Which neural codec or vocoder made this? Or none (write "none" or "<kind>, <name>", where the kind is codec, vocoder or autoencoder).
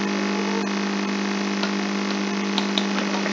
none